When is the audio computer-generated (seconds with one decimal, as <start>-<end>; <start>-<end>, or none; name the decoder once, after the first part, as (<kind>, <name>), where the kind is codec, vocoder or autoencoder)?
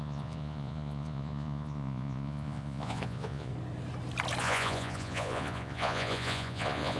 0.0-3.5 (vocoder, Vocos); 4.4-7.0